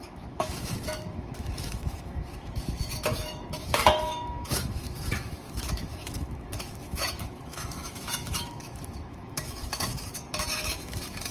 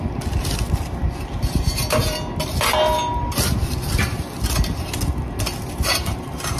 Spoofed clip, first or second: first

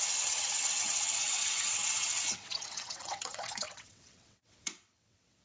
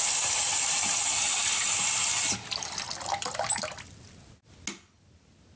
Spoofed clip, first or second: first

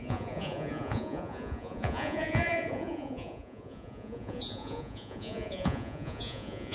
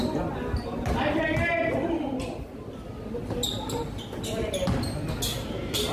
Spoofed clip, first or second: first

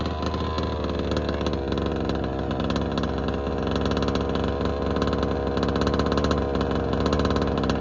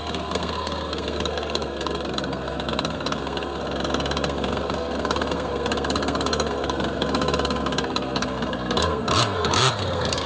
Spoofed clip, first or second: second